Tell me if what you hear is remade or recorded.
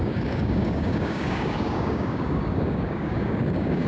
remade